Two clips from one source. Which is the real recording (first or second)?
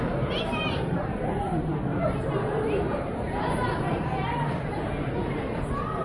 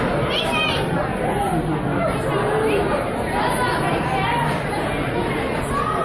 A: second